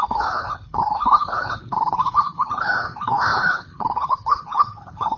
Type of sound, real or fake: fake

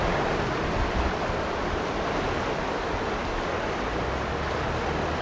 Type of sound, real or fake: real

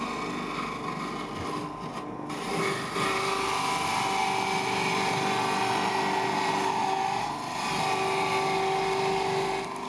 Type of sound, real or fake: real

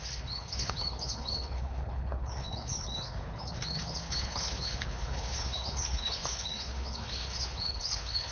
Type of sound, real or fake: fake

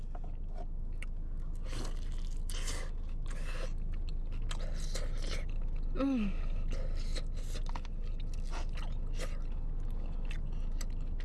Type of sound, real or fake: real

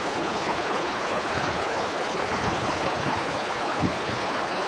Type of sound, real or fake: fake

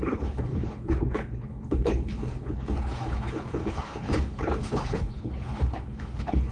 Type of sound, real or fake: fake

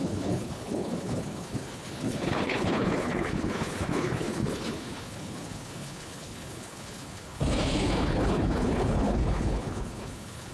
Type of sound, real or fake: fake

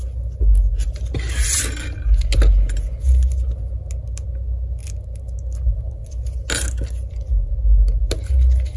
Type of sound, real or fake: real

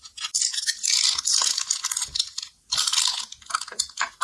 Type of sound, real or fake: real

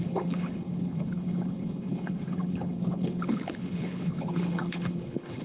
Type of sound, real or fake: fake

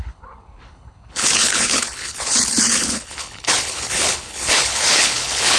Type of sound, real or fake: fake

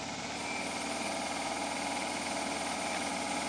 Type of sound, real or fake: real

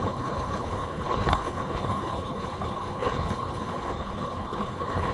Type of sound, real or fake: fake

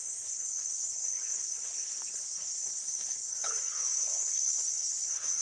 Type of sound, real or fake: fake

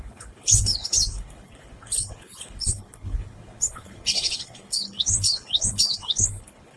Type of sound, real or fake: fake